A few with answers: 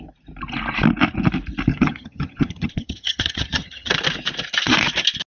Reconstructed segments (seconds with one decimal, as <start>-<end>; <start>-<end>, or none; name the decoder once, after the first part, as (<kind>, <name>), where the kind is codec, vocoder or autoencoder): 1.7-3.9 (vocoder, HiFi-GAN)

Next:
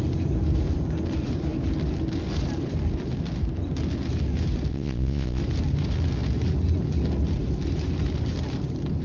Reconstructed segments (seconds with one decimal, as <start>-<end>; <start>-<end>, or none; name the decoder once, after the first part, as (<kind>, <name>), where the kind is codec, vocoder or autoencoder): 4.7-5.4 (vocoder, Vocos)

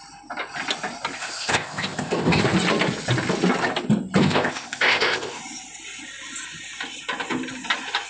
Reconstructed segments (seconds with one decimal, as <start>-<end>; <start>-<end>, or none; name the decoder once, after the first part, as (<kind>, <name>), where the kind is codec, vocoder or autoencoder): 1.2-2.4 (codec, ZipCodec); 4.2-5.4

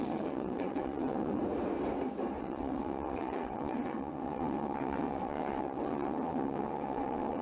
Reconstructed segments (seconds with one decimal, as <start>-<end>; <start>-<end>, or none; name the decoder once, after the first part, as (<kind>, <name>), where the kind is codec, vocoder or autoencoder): 0.0-1.4 (vocoder, WaveNeXt); 2.4-7.4

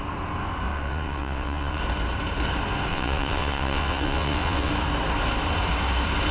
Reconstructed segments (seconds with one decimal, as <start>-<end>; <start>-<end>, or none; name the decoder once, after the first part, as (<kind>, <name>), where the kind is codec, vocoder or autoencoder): 0.7-1.8 (vocoder, WaveNeXt); 2.9-4.7

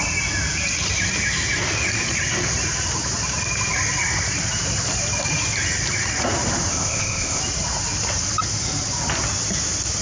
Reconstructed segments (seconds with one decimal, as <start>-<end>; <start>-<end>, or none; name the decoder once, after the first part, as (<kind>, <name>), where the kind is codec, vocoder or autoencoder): 6.7-7.4 (codec, ZipCodec)

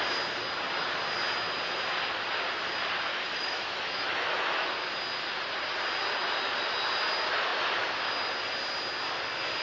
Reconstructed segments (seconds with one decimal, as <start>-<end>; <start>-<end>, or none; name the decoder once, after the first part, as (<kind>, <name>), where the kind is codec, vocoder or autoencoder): 3.1-4.7 (autoencoder, DAC-VAE)

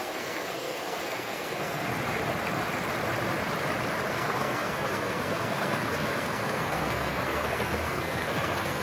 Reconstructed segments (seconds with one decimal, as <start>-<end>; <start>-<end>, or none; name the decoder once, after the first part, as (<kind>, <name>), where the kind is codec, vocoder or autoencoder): 0.0-1.9 (codec, SNAC); 4.1-8.8